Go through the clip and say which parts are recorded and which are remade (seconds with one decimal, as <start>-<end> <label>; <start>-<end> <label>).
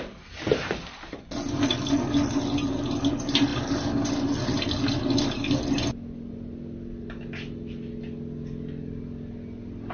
0.0-9.9 recorded